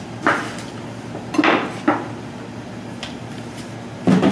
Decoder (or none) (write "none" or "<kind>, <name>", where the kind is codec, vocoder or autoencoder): none